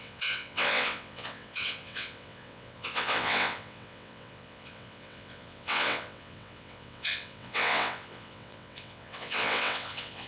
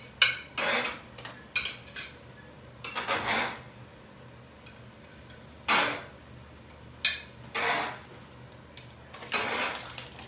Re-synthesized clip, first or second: first